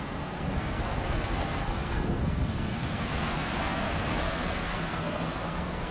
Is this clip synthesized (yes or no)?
yes